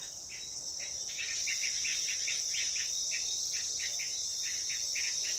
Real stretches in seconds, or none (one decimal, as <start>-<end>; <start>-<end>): 0.0-5.4